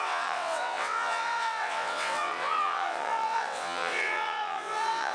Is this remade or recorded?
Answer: remade